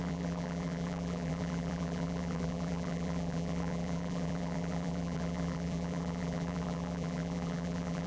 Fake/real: fake